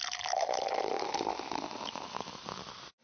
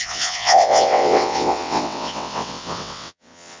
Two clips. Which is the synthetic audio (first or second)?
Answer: second